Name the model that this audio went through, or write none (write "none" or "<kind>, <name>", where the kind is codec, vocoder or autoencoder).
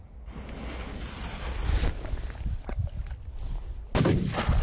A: none